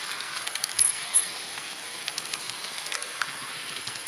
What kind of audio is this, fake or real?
fake